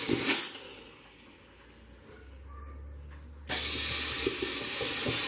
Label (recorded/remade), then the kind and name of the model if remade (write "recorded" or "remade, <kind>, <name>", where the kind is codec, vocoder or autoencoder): recorded